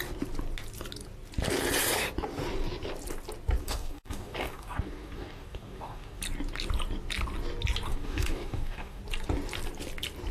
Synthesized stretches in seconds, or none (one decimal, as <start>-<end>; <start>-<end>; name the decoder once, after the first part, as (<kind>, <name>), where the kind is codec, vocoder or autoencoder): 3.6-6.2 (codec, DAC); 7.9-9.0

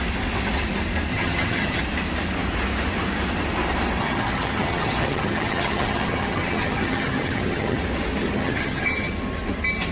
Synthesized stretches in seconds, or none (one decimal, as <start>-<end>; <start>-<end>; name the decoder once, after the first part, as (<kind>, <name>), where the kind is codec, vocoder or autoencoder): 1.1-1.8 (vocoder, HiFi-GAN); 4.0-7.8; 8.2-9.1

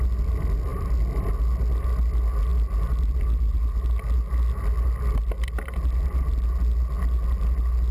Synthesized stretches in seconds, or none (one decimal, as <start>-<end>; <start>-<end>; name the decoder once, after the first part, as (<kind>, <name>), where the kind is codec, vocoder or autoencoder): none

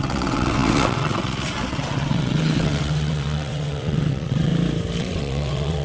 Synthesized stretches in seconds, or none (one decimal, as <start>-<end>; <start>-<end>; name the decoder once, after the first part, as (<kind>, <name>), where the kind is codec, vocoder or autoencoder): 0.0-4.5 (vocoder, WaveNeXt); 5.0-5.8